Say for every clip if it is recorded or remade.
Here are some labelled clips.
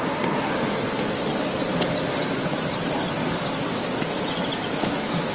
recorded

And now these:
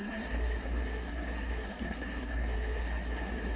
remade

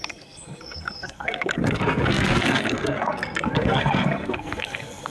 remade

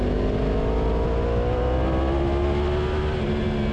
recorded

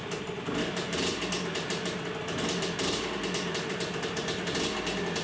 recorded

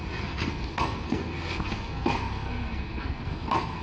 remade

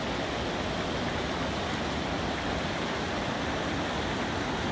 recorded